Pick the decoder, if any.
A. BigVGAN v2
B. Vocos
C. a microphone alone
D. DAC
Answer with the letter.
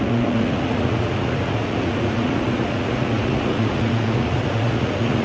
B